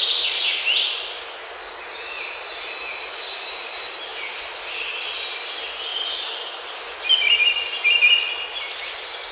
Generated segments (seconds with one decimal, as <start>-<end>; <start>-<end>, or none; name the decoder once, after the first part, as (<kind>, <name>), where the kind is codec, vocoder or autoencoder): none